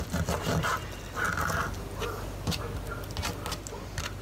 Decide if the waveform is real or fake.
real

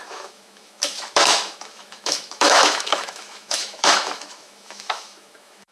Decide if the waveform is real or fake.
fake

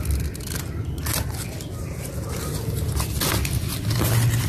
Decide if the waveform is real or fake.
real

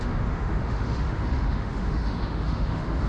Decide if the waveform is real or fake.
fake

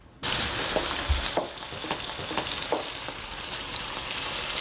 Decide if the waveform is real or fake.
real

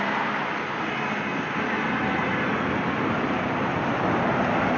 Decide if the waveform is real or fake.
real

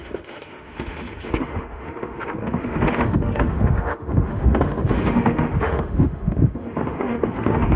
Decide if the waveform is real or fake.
fake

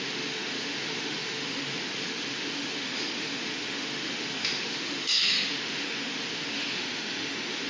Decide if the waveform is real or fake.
fake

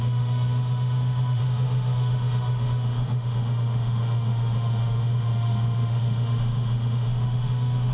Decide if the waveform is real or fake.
fake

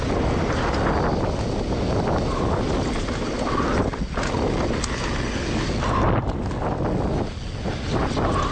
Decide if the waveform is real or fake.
real